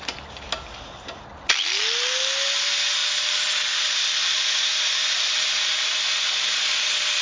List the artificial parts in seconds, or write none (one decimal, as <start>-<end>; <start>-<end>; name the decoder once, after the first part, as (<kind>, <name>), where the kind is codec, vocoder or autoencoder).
none